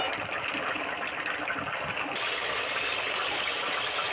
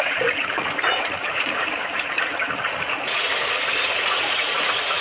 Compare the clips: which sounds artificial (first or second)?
second